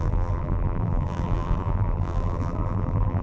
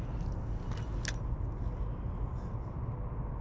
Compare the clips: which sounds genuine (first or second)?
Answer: second